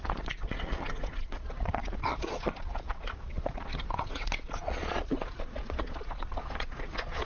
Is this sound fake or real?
fake